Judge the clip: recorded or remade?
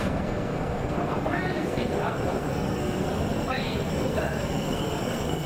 remade